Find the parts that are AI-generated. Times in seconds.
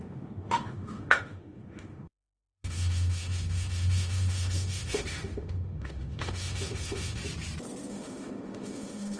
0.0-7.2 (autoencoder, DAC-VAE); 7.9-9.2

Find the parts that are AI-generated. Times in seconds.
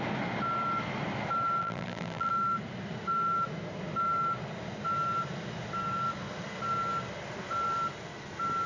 1.6-2.3 (vocoder, BigVGAN v2)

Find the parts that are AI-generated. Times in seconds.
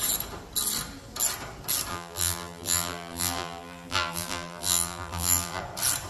1.9-5.6 (vocoder, BigVGAN v2)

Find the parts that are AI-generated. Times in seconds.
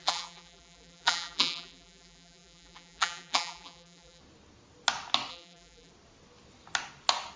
0.0-4.2 (vocoder, BigVGAN v2); 5.3-5.9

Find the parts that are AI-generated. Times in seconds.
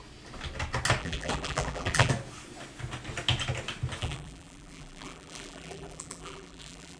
1.0-2.1 (vocoder, BigVGAN v2); 4.0-7.0